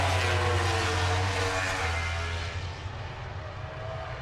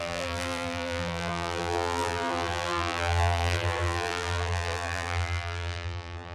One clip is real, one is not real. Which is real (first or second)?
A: first